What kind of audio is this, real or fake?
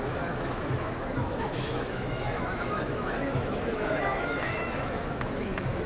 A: fake